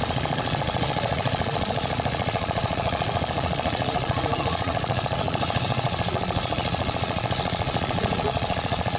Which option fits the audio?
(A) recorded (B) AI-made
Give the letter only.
B